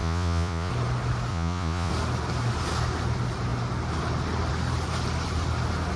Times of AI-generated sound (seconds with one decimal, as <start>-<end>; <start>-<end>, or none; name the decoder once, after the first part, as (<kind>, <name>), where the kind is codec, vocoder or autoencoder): 0.0-0.7 (vocoder, Vocos); 1.3-1.9